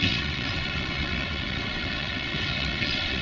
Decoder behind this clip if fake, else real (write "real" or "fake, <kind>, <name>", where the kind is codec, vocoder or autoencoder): fake, vocoder, WaveNeXt